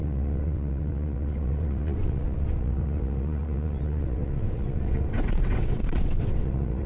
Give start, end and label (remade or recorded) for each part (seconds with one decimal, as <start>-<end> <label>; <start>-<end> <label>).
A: 0.0-6.9 remade